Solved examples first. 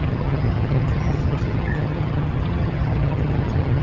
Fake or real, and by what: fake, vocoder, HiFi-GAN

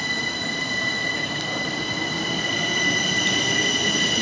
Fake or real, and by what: real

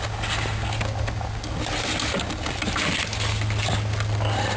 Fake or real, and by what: real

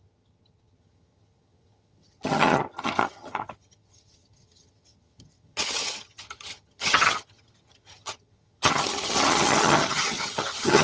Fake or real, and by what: fake, vocoder, HiFi-GAN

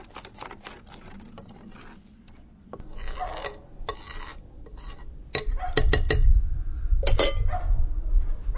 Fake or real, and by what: real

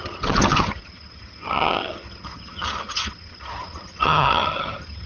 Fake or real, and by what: fake, vocoder, HiFi-GAN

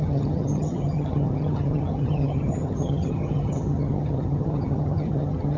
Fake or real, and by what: fake, vocoder, HiFi-GAN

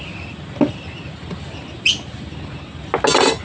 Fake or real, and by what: real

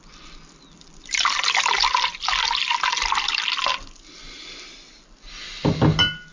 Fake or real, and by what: real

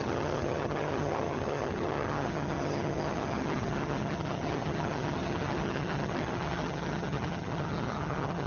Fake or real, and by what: fake, vocoder, HiFi-GAN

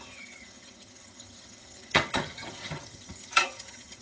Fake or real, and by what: fake, vocoder, HiFi-GAN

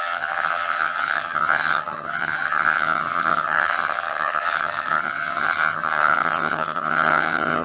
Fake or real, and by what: fake, vocoder, HiFi-GAN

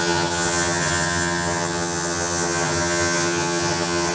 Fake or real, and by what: fake, vocoder, HiFi-GAN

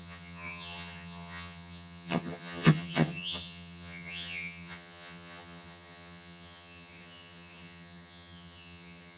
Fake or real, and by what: fake, vocoder, HiFi-GAN